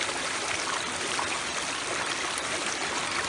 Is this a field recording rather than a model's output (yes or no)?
yes